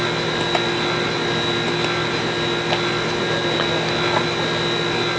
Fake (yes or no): no